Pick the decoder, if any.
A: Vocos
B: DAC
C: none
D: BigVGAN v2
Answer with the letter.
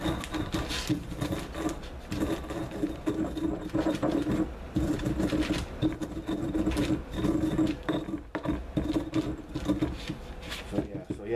C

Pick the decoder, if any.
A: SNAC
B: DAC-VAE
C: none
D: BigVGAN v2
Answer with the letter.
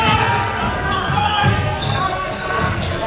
A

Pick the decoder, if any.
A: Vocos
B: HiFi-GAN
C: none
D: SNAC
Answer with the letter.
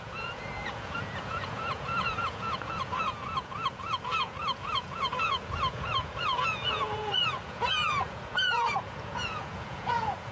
A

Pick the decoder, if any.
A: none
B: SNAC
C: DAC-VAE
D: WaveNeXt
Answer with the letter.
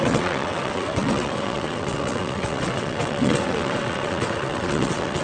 D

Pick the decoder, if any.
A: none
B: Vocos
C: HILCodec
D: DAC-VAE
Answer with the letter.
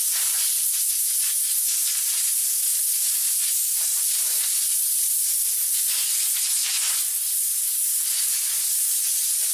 A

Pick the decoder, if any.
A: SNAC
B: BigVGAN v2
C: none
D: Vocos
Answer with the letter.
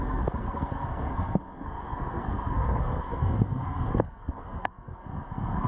A